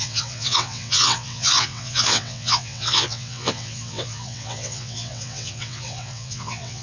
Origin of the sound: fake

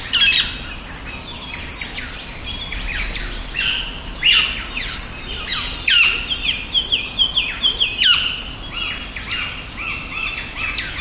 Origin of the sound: real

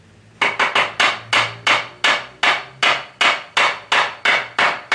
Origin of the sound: real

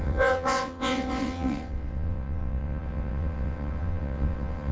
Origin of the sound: fake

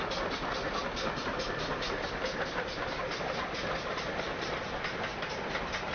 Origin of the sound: real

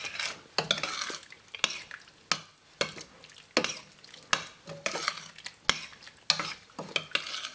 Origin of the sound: real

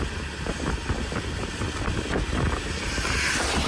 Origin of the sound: real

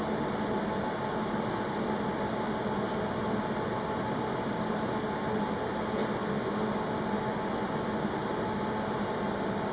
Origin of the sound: real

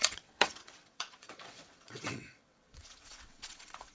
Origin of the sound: fake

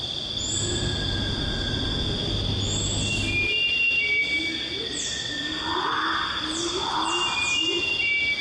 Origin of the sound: real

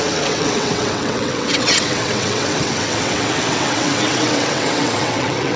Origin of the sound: fake